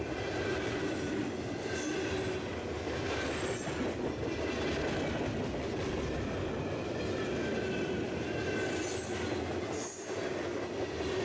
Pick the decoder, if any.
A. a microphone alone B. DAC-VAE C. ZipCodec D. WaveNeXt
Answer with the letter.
A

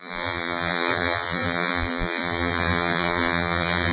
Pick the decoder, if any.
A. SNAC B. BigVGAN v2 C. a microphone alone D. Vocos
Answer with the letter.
B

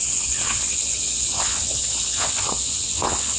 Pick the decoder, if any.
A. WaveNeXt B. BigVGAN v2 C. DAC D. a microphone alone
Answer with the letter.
A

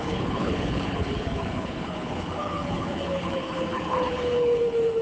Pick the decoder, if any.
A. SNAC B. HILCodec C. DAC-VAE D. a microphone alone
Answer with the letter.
B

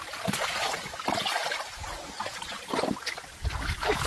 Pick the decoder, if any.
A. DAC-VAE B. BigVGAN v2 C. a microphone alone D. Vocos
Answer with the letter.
C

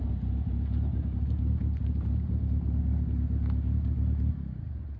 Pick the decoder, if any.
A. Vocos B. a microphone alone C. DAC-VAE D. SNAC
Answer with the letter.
B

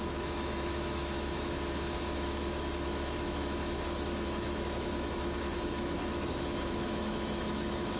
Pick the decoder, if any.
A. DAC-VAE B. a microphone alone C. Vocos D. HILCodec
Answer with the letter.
A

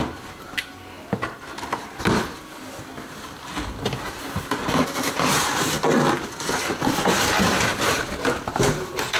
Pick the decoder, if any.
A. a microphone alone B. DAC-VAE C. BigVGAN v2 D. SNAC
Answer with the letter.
A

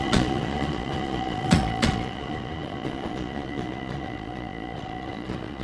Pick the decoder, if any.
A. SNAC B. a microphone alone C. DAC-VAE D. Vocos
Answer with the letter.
D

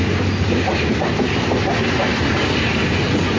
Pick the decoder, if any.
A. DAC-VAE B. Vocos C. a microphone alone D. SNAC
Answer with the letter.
C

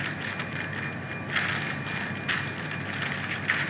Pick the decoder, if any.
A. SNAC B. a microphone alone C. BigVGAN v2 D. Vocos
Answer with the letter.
B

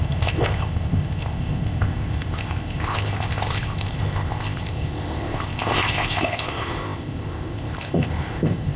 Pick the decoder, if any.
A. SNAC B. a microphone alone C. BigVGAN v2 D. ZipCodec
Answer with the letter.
D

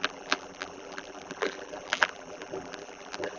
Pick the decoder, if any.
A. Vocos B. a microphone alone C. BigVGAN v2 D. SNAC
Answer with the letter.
C